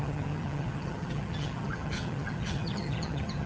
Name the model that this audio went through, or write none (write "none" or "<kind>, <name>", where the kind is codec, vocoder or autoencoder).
vocoder, HiFi-GAN